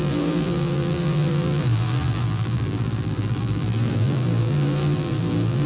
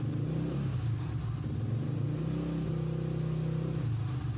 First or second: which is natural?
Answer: second